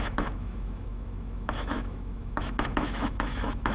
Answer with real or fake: fake